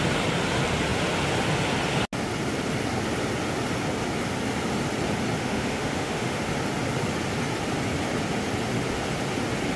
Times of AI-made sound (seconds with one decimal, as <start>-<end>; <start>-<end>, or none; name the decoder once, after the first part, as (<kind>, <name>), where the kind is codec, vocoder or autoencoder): 5.4-6.4 (autoencoder, DAC-VAE)